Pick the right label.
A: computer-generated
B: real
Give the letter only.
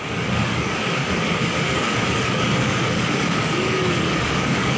A